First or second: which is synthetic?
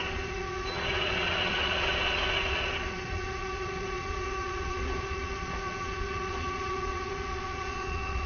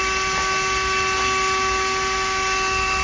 first